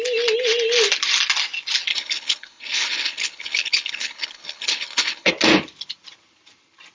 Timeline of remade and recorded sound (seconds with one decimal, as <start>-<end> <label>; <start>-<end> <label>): 0.0-1.9 recorded; 1.9-5.3 remade; 5.3-6.9 recorded